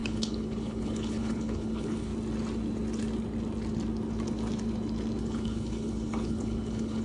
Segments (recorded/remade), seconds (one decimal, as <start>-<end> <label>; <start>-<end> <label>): 0.0-2.1 remade; 2.1-5.2 recorded; 5.2-7.0 remade